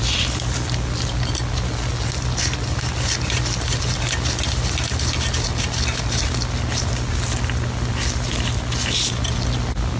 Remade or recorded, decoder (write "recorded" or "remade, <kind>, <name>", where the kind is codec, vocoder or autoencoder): recorded